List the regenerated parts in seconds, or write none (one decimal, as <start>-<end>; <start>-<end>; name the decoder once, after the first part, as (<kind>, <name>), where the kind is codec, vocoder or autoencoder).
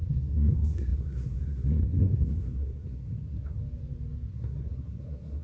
0.0-3.6 (codec, SNAC); 4.3-5.4